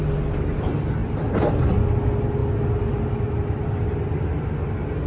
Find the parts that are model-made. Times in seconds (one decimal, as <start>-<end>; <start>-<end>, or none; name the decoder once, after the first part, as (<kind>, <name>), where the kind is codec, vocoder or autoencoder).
none